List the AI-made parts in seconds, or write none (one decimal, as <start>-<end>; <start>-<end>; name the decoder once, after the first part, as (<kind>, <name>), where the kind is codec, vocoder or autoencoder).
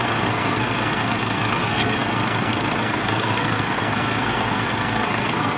0.0-5.6 (codec, SNAC)